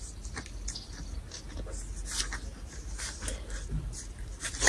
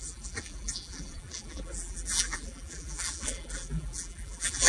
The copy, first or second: second